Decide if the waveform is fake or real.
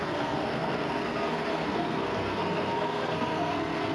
fake